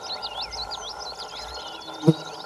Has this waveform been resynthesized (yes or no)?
no